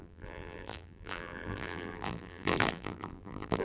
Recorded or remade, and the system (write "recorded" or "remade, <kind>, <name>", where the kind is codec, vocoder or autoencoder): remade, vocoder, BigVGAN v2